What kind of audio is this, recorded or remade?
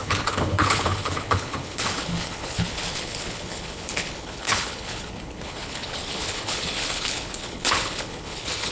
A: remade